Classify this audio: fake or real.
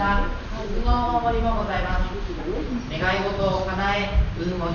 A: fake